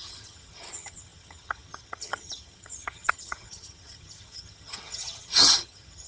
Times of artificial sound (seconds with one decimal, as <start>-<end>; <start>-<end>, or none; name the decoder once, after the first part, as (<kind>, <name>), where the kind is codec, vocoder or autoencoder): 0.0-6.1 (vocoder, HiFi-GAN)